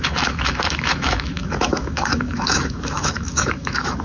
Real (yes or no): no